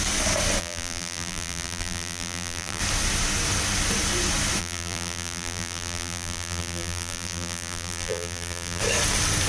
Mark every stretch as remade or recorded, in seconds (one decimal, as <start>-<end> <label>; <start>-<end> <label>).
0.0-0.6 recorded; 0.6-2.8 remade; 2.8-4.6 recorded; 4.6-8.8 remade; 8.8-9.5 recorded